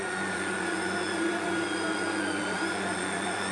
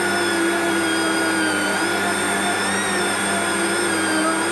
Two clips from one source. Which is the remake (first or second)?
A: first